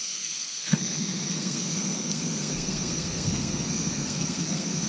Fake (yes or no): yes